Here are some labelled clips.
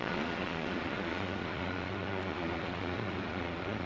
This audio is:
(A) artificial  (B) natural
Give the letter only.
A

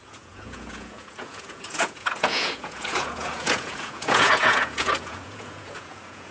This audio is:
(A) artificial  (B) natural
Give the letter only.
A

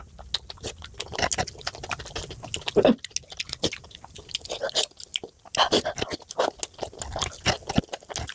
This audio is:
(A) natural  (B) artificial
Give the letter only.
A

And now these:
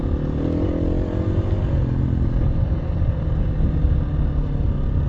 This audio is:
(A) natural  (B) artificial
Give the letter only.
A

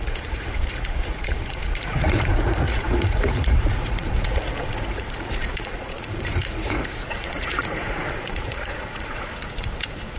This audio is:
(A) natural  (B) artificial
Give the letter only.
B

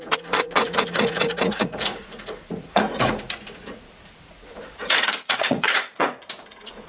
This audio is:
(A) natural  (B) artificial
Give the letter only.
B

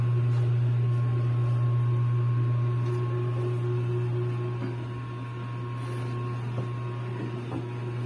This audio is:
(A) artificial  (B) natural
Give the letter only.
B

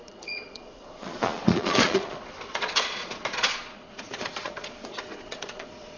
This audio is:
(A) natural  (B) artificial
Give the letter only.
B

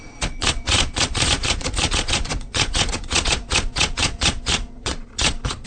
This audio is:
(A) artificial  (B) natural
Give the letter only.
A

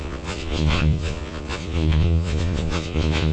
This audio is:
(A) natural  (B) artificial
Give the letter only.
B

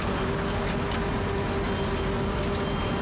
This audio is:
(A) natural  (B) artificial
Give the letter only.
A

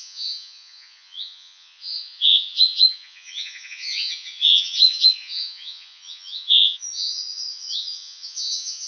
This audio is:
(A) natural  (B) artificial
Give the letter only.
B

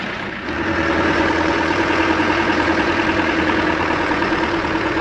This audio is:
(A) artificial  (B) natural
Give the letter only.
A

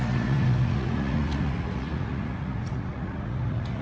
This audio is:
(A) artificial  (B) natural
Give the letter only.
A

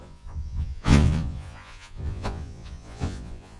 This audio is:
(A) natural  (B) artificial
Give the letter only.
B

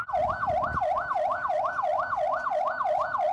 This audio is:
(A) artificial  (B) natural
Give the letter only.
B